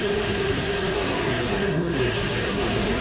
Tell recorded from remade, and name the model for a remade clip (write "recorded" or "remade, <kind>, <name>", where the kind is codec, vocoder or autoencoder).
remade, codec, SNAC